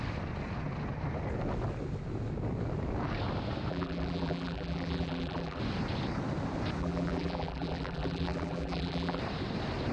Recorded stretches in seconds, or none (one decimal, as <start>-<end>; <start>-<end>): 0.0-3.7; 5.6-6.8; 9.2-9.9